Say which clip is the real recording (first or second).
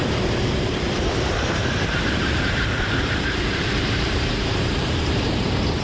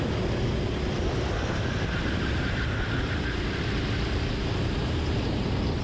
second